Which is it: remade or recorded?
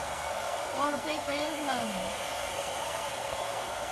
remade